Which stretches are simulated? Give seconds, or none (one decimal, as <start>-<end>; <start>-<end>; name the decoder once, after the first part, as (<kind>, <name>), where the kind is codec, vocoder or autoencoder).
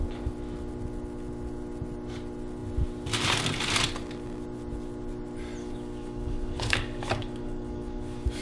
5.6-8.4 (codec, DAC)